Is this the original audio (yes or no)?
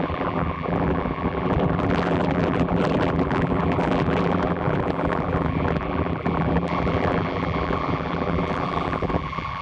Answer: no